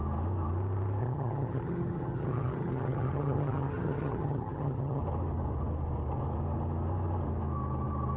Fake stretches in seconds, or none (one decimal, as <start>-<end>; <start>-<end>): 1.0-5.0